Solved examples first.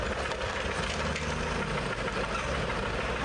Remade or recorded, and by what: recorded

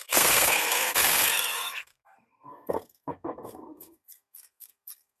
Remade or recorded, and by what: remade, codec, SNAC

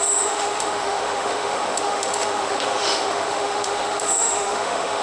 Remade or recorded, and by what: remade, autoencoder, DAC-VAE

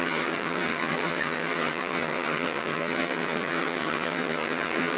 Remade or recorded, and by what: remade, vocoder, HiFi-GAN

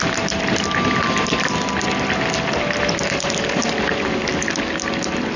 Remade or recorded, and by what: recorded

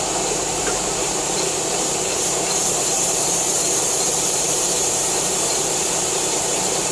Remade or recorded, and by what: remade, vocoder, BigVGAN v2